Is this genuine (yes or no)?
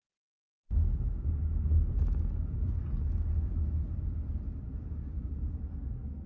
yes